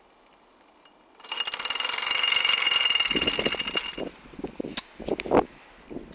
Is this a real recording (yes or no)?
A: yes